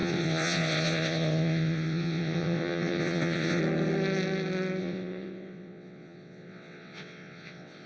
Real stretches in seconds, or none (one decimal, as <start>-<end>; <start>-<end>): 3.6-4.8